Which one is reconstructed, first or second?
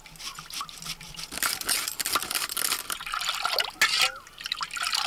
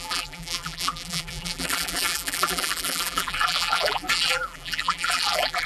second